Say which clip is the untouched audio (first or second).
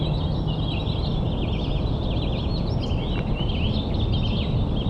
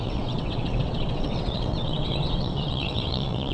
first